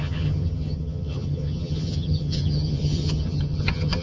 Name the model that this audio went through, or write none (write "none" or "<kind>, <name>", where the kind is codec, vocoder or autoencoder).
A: vocoder, HiFi-GAN